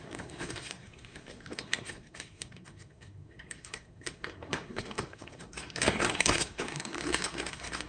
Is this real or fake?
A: fake